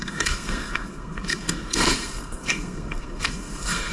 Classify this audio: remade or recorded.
remade